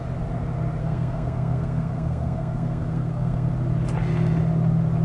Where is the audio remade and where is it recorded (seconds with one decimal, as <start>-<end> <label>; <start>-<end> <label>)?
0.0-0.8 recorded; 0.8-3.5 remade; 3.5-5.0 recorded